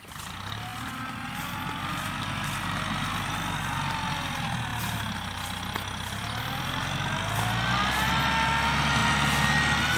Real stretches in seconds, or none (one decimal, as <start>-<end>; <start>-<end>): 0.0-10.0